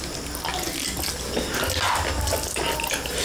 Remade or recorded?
recorded